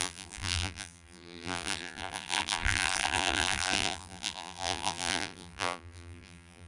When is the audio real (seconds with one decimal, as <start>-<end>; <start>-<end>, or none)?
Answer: none